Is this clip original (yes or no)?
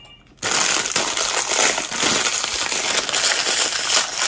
yes